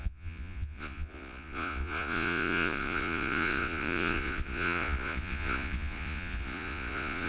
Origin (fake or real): fake